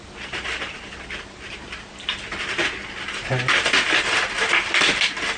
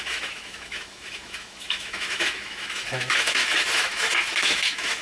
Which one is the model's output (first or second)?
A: second